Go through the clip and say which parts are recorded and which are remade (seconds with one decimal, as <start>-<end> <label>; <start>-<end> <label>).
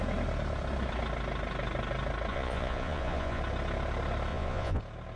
0.0-2.3 recorded; 2.3-3.4 remade; 3.4-4.3 recorded; 4.3-4.8 remade; 4.8-5.2 recorded